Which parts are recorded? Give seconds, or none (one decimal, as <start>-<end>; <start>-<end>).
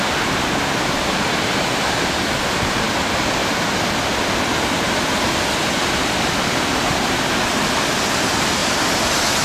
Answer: 0.0-9.4